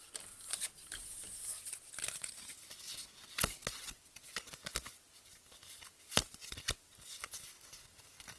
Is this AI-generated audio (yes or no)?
no